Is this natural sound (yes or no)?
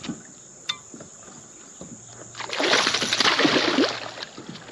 yes